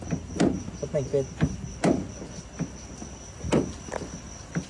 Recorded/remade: recorded